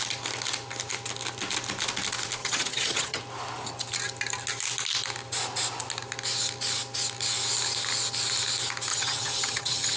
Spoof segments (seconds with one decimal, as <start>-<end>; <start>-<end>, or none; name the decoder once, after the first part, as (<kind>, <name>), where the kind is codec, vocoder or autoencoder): 2.4-3.2 (vocoder, HiFi-GAN); 8.9-10.0